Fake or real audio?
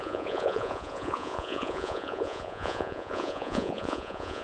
fake